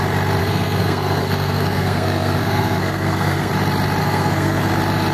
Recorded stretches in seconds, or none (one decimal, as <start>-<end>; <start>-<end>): 0.0-0.4; 3.5-4.0; 4.6-5.1